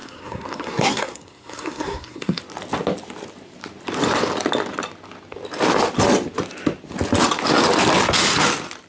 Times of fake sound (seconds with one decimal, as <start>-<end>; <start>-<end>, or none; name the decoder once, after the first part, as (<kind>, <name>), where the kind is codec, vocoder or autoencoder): 0.0-2.4 (codec, SNAC)